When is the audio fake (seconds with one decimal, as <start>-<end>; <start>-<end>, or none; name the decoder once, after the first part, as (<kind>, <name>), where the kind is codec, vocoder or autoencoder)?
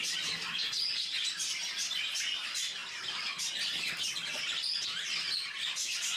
none